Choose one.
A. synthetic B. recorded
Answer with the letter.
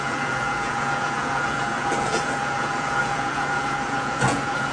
A